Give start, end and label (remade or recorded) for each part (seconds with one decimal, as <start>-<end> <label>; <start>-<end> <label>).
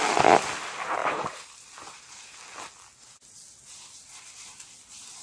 0.0-1.0 recorded; 1.0-1.7 remade; 1.7-5.2 recorded